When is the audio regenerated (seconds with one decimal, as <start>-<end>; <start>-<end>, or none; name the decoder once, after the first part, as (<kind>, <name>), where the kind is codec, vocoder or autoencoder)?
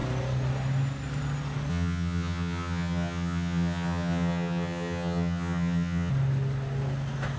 1.7-6.1 (vocoder, HiFi-GAN)